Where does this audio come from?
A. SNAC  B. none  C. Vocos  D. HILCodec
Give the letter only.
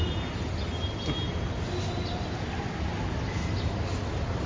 B